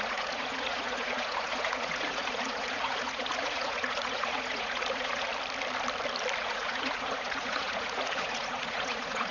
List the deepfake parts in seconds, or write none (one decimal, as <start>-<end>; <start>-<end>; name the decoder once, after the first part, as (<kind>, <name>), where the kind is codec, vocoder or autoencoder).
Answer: 0.0-5.3 (vocoder, Vocos); 6.4-9.3